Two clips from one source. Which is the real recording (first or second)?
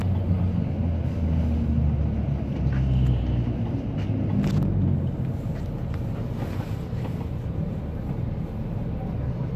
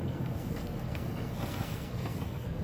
first